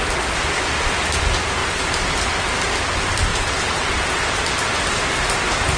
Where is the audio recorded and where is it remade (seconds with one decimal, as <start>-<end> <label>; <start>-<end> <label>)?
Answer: 0.0-3.3 recorded; 3.3-4.4 remade; 4.4-5.8 recorded